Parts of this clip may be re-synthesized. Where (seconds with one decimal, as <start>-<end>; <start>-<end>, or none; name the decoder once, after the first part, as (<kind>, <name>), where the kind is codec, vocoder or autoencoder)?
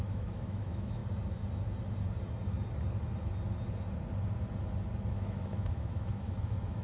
0.0-1.0 (autoencoder, DAC-VAE); 5.1-6.8